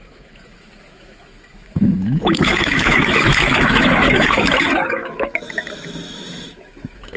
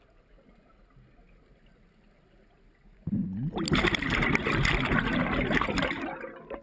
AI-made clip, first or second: first